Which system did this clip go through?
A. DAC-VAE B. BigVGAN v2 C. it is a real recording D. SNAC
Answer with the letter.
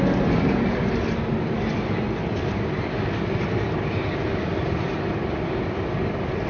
C